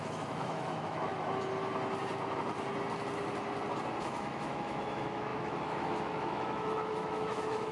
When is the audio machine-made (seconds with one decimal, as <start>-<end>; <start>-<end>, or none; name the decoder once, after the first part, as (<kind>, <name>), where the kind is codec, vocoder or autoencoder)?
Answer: 0.0-1.1 (autoencoder, DAC-VAE); 4.0-7.7